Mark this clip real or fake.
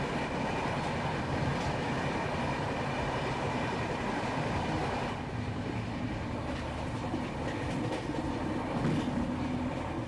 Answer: real